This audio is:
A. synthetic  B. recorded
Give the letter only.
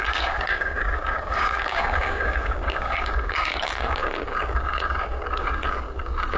A